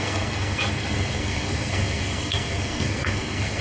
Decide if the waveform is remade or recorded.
remade